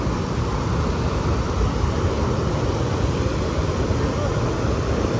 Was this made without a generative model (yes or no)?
no